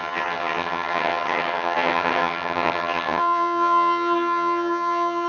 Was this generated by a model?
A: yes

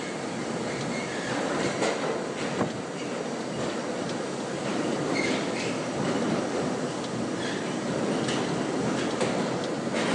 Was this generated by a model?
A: no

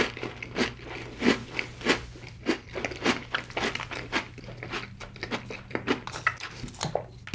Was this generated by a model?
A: no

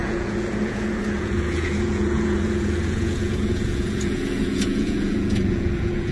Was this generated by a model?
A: yes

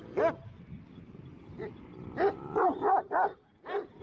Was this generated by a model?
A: no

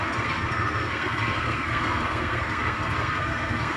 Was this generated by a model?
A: yes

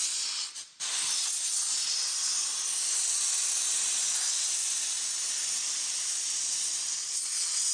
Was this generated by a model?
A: no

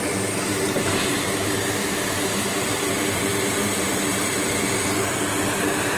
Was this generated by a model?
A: yes